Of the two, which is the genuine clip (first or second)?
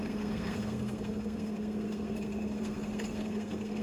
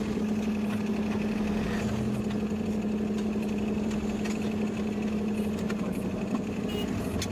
second